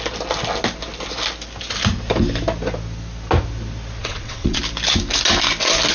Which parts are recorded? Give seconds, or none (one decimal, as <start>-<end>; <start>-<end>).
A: 0.0-4.0; 4.6-5.9